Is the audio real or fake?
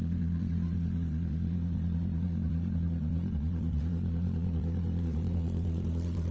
fake